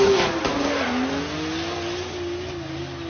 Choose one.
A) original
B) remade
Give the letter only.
A